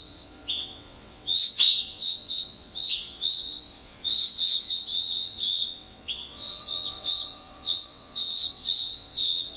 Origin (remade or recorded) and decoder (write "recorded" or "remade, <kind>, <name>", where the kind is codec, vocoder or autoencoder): remade, vocoder, WaveNeXt